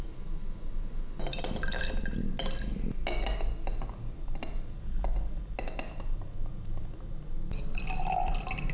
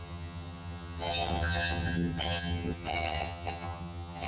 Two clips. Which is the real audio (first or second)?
first